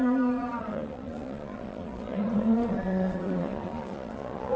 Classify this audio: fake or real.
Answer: fake